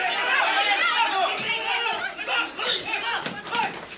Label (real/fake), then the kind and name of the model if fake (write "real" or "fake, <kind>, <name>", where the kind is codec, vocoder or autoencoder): real